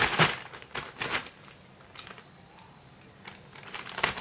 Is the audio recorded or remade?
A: recorded